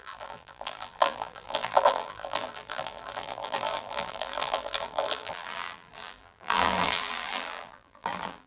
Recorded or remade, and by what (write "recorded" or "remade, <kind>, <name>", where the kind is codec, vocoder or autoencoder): remade, vocoder, BigVGAN v2